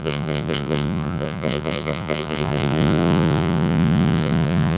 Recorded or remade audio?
remade